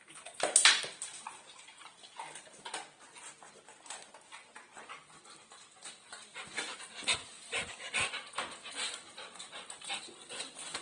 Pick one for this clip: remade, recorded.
recorded